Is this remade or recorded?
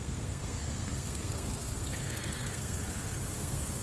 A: remade